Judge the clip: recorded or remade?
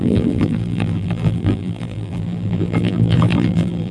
remade